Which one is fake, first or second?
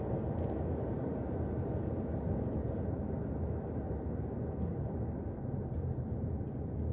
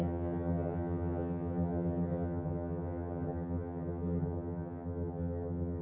second